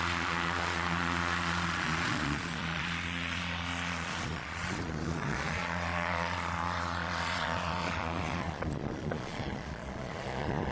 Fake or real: fake